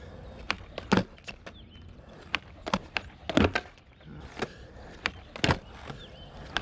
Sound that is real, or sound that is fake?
real